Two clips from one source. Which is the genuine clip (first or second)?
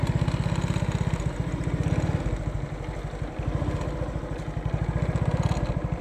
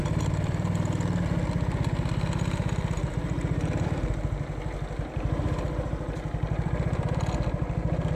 first